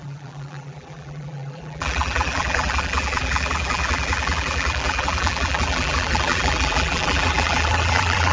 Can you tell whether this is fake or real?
fake